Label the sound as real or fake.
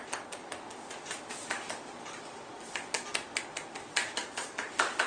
real